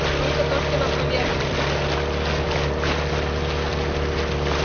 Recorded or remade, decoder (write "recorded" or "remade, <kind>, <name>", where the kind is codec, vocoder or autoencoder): recorded